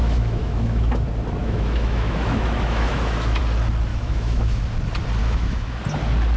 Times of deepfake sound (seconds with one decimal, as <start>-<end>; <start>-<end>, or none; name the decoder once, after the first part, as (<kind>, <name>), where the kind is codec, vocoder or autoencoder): 0.0-0.9 (autoencoder, DAC-VAE); 1.4-3.4; 3.9-4.6; 5.2-5.8

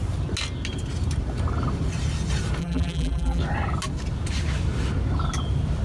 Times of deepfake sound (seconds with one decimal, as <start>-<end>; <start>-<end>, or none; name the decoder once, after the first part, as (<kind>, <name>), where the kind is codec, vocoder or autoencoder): 2.6-3.4 (vocoder, BigVGAN v2)